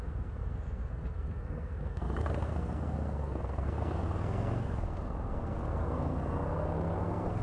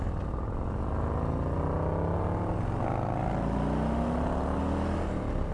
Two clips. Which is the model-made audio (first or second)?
first